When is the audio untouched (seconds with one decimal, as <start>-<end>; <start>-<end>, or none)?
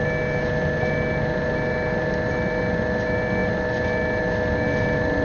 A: 0.0-5.2